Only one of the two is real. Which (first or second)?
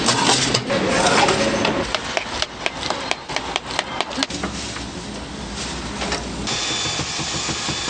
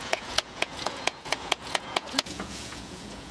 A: first